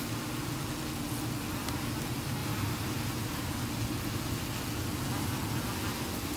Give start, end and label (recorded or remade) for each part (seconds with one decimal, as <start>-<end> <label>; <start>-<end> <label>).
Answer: 0.0-2.4 recorded; 2.4-3.5 remade; 3.5-6.4 recorded